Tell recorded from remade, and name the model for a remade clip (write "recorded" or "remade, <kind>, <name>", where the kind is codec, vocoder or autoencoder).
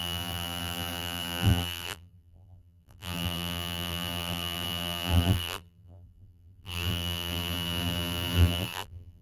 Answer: remade, vocoder, BigVGAN v2